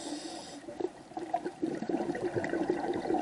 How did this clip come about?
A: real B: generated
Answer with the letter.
B